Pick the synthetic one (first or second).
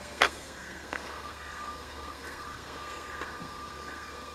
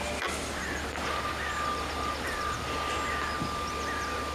first